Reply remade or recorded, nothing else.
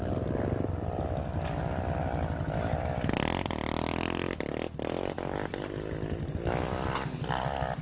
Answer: recorded